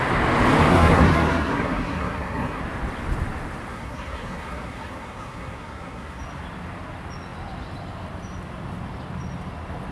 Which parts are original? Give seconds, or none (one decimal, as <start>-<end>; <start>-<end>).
0.0-0.7; 2.6-3.7; 6.2-9.9

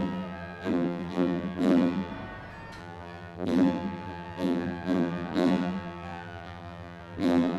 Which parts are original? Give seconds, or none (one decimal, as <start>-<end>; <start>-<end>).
2.1-2.8